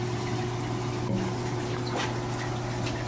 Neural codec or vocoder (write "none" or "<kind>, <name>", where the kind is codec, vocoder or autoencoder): none